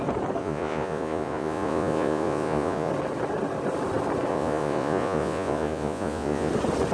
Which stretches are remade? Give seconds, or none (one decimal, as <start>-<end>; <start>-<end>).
0.4-2.9; 4.3-6.5

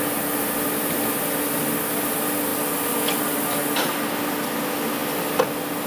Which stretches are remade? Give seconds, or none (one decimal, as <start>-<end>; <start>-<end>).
none

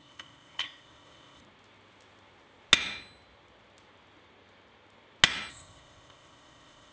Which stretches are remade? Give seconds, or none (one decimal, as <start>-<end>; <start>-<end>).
0.0-1.4; 5.5-6.9

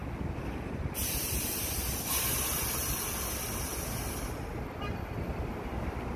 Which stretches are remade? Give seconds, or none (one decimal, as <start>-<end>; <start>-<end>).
none

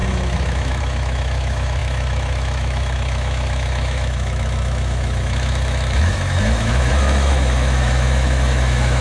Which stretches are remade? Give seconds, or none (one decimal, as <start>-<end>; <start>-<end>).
0.0-9.0

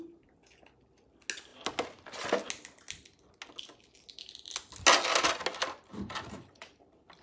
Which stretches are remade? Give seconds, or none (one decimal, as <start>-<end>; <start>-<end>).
5.9-6.7

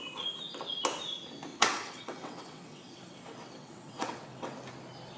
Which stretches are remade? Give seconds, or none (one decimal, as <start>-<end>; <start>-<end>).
1.5-4.6

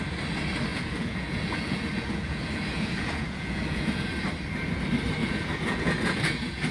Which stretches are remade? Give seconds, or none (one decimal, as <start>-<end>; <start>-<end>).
0.7-4.1; 5.2-6.7